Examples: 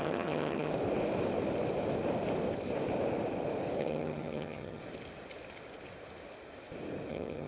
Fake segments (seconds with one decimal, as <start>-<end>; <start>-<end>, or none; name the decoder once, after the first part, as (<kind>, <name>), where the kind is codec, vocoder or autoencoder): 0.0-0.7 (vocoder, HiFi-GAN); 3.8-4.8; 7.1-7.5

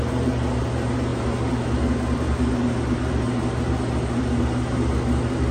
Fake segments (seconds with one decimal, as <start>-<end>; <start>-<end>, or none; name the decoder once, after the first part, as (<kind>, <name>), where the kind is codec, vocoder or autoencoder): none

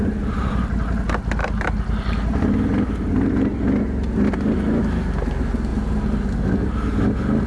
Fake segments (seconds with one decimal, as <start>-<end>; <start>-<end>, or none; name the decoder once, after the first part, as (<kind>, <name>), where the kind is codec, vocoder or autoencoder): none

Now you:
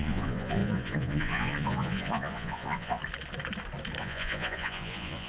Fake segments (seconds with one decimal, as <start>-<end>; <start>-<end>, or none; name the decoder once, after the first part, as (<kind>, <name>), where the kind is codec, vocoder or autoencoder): 0.0-3.0 (vocoder, Vocos); 4.0-5.3

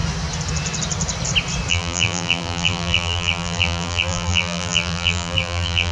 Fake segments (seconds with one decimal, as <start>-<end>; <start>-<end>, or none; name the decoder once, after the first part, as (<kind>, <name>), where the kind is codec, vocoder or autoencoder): 1.7-5.9 (vocoder, BigVGAN v2)